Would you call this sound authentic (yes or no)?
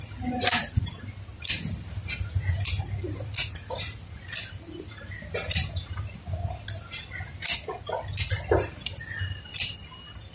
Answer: yes